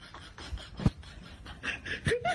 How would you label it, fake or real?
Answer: real